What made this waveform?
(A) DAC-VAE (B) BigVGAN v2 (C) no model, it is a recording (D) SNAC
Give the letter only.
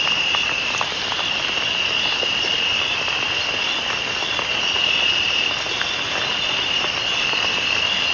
B